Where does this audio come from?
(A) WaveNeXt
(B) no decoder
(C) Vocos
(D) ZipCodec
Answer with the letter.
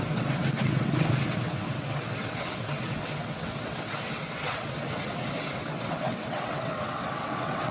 A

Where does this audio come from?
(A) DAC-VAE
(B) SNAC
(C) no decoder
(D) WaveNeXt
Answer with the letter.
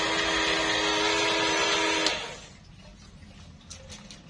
C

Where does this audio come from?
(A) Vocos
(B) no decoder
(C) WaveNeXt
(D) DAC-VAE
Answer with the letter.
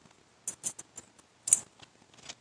B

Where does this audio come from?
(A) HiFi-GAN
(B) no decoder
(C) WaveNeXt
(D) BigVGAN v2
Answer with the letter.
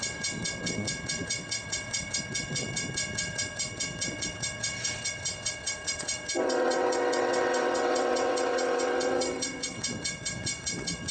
C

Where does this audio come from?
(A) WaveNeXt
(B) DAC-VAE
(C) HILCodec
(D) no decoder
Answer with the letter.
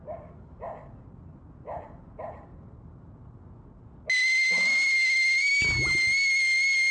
D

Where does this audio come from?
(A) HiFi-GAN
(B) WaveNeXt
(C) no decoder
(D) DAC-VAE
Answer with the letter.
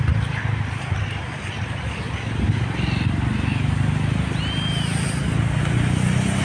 C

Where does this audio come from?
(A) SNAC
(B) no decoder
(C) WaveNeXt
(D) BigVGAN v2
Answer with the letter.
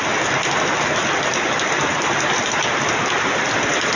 B